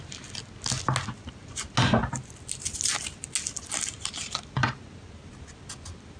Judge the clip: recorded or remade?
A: recorded